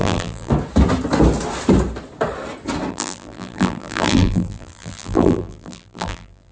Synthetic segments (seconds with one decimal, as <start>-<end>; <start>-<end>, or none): 0.0-0.5; 2.9-6.5